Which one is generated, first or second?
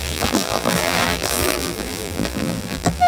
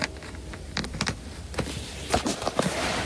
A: first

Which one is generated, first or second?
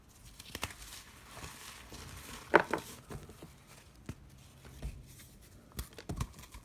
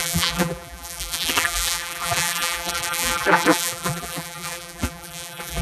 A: second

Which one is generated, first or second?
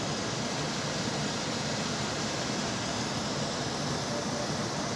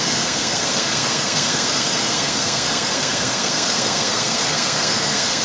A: second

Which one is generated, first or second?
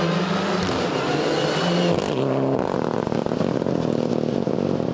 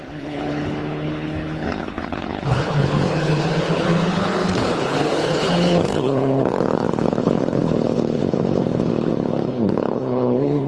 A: second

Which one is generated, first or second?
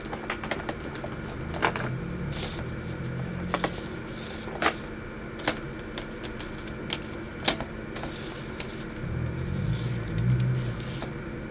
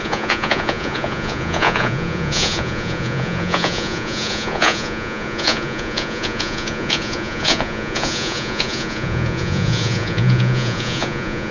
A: second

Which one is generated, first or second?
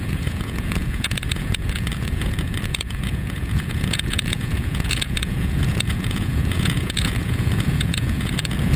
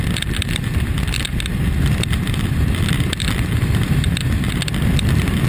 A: first